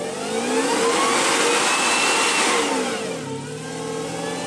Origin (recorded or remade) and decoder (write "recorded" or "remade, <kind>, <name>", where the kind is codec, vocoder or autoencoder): recorded